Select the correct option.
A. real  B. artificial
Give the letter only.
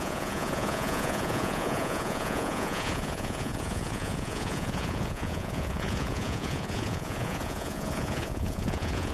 B